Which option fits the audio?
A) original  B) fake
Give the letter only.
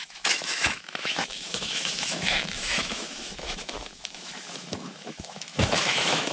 B